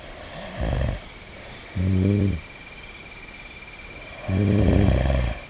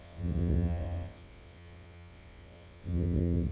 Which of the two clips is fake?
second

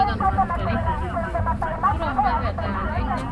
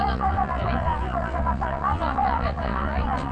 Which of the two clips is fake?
second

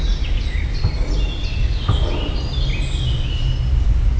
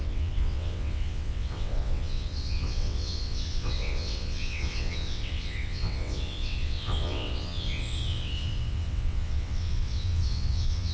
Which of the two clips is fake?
second